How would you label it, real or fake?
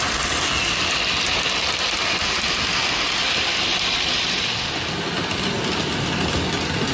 real